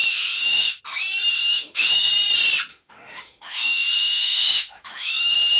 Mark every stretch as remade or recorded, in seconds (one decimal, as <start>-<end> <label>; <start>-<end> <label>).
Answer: 0.0-0.8 remade; 0.8-1.3 recorded; 1.3-2.1 remade; 2.1-2.7 recorded; 2.7-5.6 remade